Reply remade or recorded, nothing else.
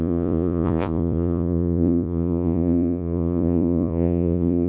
remade